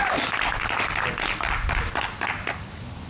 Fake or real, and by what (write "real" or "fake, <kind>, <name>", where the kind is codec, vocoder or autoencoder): real